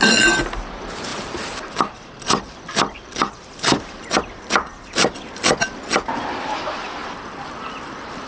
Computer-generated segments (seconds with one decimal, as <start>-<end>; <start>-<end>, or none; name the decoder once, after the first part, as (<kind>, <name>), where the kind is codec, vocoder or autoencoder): 1.1-4.3 (vocoder, BigVGAN v2); 4.7-5.8; 7.0-8.3